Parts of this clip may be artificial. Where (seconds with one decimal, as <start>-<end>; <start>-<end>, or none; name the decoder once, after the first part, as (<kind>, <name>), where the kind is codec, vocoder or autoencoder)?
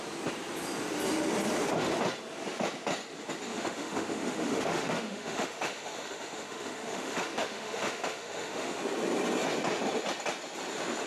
3.5-8.8 (autoencoder, DAC-VAE)